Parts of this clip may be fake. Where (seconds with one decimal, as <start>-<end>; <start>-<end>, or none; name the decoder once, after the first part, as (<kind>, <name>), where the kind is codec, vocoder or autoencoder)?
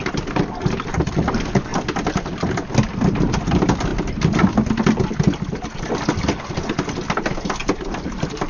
none